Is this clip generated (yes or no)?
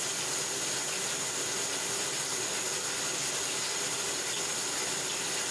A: no